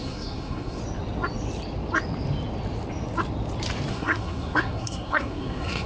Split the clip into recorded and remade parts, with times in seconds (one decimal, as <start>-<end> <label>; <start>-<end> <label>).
0.0-0.8 remade; 0.8-3.9 recorded; 3.9-5.9 remade